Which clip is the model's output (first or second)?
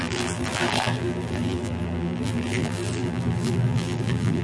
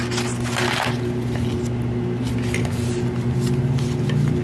first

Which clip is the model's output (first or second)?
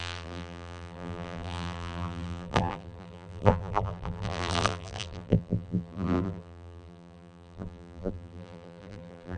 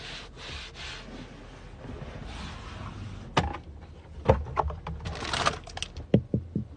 first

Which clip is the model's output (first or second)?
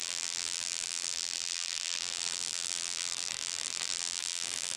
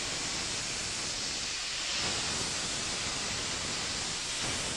first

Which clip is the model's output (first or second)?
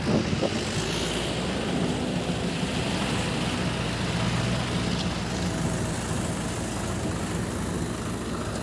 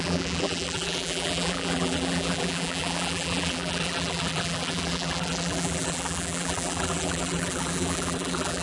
second